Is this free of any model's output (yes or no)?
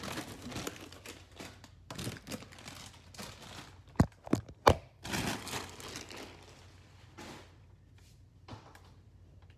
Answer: yes